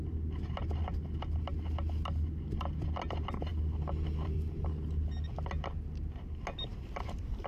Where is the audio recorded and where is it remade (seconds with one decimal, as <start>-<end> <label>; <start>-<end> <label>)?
0.0-3.5 recorded; 3.5-4.6 remade; 4.6-6.7 recorded; 6.7-7.5 remade